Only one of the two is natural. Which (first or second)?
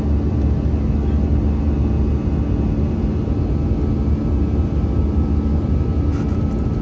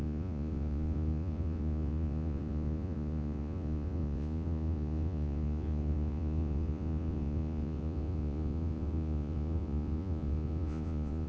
first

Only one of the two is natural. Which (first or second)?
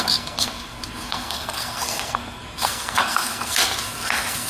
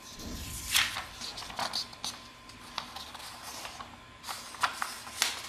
second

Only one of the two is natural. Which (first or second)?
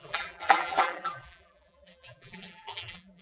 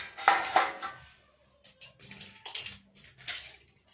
second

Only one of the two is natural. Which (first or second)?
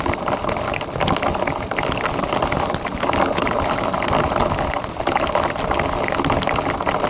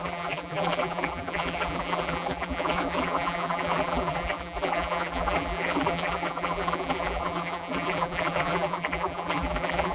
first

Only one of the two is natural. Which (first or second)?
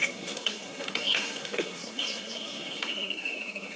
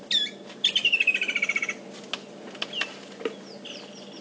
second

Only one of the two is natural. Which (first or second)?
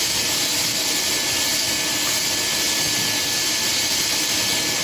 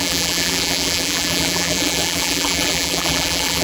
first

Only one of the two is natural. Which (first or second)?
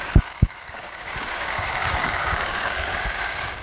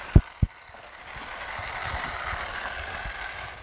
second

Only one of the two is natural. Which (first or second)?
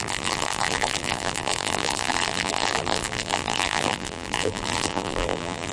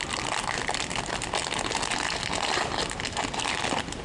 second